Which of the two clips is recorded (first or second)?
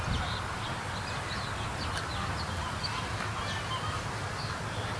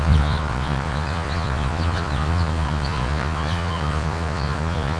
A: first